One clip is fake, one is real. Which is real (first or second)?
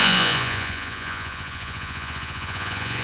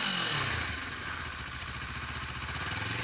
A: second